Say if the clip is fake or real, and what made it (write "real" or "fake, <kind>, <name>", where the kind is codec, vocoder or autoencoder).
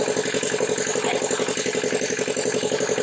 real